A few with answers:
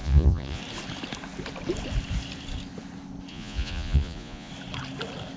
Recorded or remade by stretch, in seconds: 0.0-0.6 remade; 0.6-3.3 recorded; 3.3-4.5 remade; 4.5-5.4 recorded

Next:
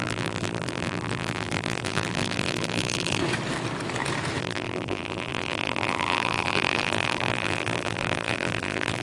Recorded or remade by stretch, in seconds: 0.0-3.2 remade; 3.2-4.4 recorded; 4.4-9.0 remade